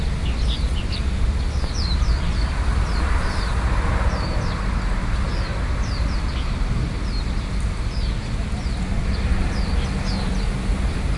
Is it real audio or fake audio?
real